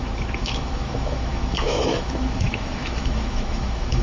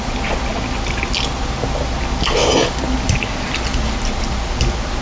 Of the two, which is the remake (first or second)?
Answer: first